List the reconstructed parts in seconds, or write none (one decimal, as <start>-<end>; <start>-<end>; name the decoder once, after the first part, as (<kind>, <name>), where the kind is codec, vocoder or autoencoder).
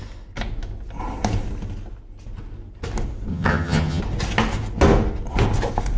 3.3-4.0 (vocoder, HiFi-GAN)